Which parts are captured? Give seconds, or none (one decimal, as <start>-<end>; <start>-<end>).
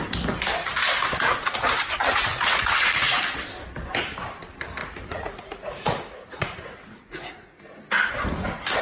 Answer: 0.0-2.0; 3.2-4.8; 7.6-8.8